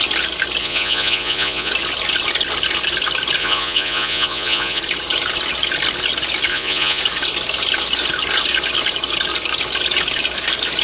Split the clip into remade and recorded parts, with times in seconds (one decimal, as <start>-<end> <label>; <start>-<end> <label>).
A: 0.0-0.6 recorded; 0.6-1.7 remade; 1.7-3.4 recorded; 3.4-4.8 remade; 4.8-6.5 recorded; 6.5-7.0 remade; 7.0-10.8 recorded